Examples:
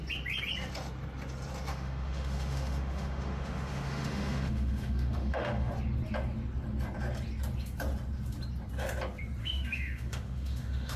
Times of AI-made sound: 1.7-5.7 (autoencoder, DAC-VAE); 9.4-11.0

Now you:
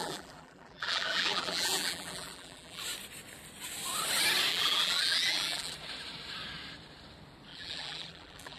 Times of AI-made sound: 0.0-2.8 (vocoder, BigVGAN v2); 4.5-5.7; 7.5-8.6

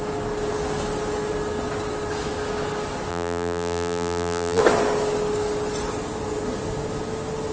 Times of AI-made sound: 3.1-4.6 (vocoder, BigVGAN v2)

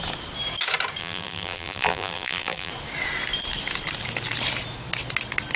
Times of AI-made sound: 1.0-2.7 (vocoder, BigVGAN v2)

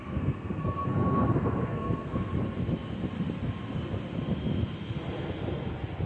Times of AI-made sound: 0.0-2.3 (codec, SNAC)